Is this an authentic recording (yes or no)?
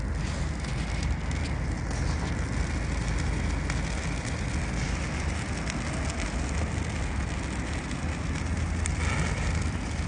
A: yes